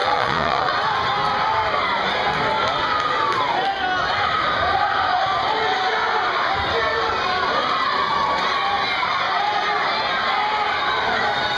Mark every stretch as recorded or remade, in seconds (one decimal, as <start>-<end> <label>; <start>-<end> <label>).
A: 0.0-0.7 remade; 0.7-11.6 recorded